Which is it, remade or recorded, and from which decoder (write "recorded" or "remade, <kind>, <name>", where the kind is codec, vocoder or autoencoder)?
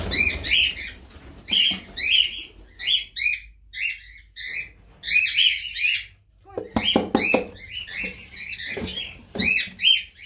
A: recorded